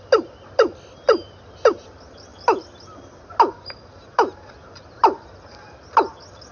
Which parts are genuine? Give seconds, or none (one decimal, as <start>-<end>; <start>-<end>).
0.0-6.5